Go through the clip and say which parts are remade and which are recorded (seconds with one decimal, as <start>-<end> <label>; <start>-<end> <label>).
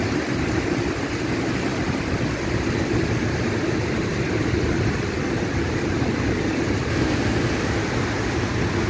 0.0-8.9 recorded